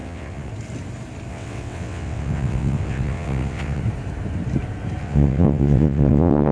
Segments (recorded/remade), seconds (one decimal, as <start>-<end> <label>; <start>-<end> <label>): 0.0-0.5 remade; 0.5-1.3 recorded; 1.3-3.8 remade; 3.8-5.0 recorded; 5.0-6.5 remade